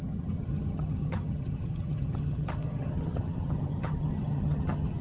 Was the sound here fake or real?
fake